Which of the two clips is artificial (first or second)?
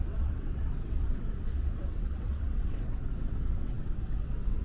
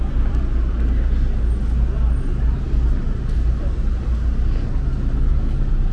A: first